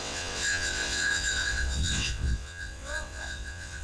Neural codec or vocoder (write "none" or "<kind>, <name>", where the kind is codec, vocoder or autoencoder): vocoder, WaveNeXt